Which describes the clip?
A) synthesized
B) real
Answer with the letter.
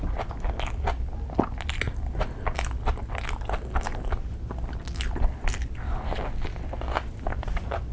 B